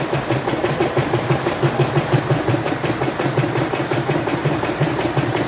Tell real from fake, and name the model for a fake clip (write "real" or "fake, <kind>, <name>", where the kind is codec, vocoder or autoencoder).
fake, vocoder, BigVGAN v2